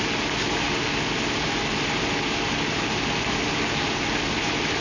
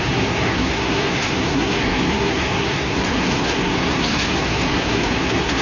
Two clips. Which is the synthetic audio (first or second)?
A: second